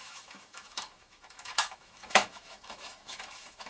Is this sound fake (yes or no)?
yes